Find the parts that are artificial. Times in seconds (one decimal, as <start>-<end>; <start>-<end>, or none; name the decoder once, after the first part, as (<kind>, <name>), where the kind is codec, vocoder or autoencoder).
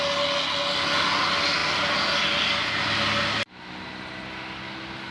none